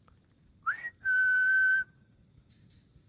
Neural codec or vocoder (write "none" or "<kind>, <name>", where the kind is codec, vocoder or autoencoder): none